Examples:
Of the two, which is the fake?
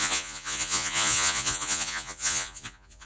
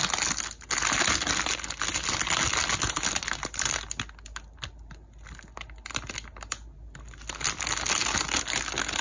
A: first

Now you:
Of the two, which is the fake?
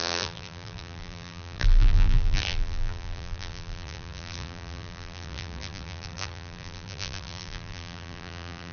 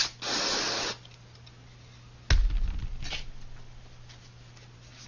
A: first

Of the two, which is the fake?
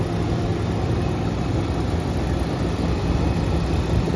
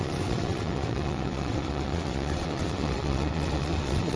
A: second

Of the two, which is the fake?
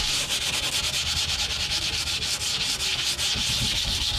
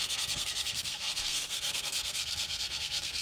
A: second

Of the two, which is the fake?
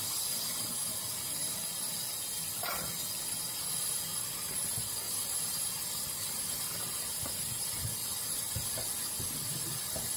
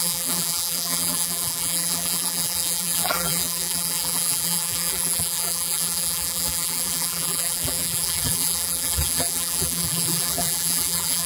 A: second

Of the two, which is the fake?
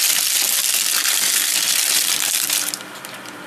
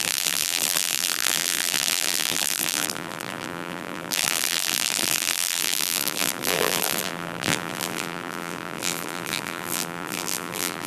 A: second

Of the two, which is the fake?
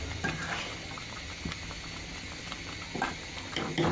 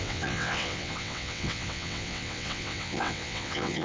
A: second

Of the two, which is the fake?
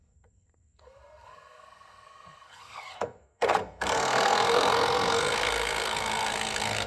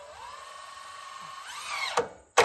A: first